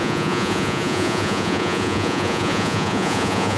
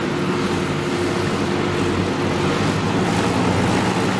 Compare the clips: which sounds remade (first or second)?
first